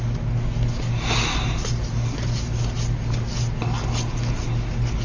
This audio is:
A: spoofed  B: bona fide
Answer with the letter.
B